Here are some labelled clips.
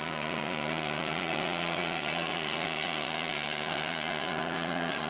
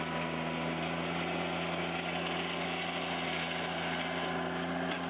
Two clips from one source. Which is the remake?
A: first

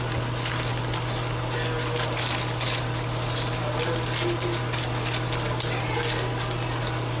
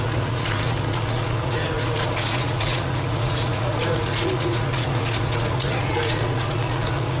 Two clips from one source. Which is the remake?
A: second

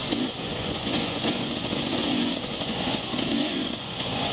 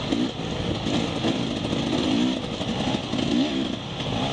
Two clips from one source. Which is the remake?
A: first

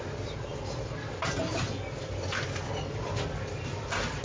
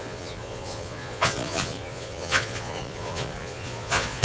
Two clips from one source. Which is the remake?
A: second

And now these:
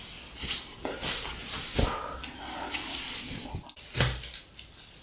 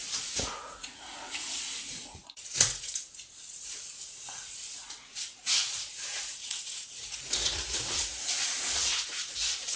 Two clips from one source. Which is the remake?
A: second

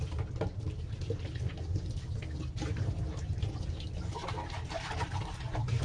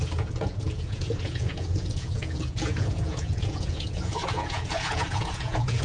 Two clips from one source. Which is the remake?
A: second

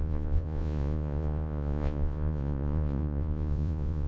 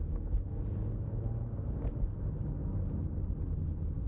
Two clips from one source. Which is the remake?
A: first